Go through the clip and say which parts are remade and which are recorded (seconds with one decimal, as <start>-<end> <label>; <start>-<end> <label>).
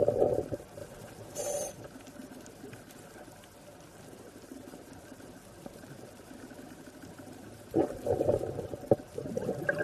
0.0-9.8 recorded